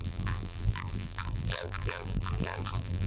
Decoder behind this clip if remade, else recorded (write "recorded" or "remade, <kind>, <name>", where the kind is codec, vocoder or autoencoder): remade, vocoder, BigVGAN v2